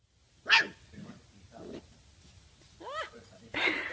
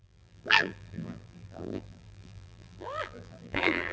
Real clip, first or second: first